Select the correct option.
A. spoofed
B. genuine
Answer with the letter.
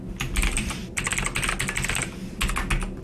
B